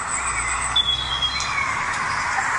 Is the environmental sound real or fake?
real